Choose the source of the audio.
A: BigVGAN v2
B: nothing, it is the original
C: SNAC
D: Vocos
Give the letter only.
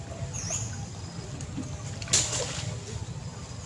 B